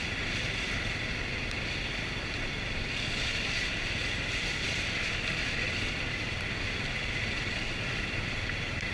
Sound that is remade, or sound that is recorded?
recorded